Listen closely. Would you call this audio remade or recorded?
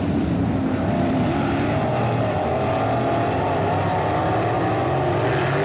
recorded